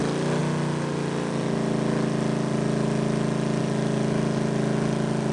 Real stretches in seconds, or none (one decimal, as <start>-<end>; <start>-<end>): 0.0-5.3